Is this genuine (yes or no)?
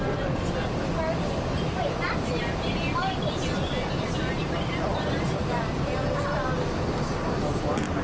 yes